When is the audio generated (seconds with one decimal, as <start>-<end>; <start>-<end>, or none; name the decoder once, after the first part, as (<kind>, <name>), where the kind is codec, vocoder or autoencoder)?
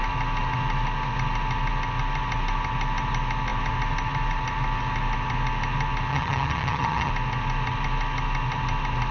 6.1-7.1 (vocoder, HiFi-GAN)